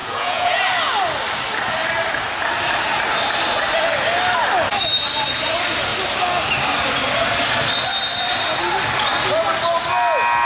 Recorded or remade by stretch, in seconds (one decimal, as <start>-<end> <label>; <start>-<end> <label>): 0.0-0.6 remade; 0.6-10.4 recorded